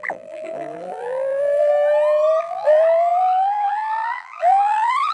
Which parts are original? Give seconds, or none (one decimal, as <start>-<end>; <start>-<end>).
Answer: 1.7-2.4

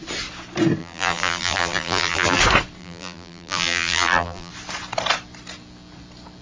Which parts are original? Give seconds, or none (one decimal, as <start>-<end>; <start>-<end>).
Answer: 0.0-0.8; 2.4-2.8; 4.5-6.4

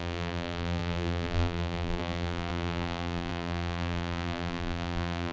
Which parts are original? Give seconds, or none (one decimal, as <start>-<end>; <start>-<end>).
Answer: none

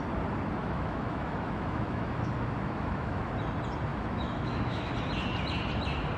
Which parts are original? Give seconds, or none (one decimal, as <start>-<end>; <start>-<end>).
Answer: 0.0-0.6; 3.3-3.9; 4.9-6.2

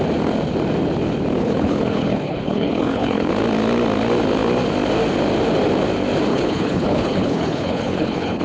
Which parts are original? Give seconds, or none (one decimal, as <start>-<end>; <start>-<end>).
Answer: 0.0-1.4; 3.3-6.3